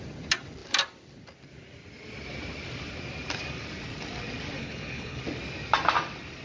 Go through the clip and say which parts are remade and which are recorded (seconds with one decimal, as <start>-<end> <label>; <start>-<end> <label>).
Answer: 0.0-4.6 recorded; 4.6-5.2 remade; 5.2-6.4 recorded